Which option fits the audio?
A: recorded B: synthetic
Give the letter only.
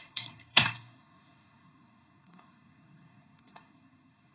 B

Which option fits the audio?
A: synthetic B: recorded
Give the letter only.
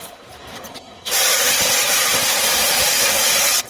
A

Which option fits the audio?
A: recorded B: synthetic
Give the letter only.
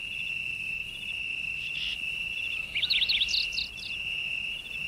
A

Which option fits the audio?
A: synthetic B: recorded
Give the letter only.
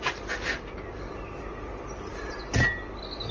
B